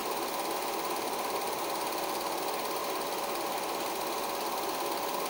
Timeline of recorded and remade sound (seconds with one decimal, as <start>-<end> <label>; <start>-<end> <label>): 0.0-2.4 remade; 2.4-2.8 recorded; 2.8-3.9 remade; 3.9-5.3 recorded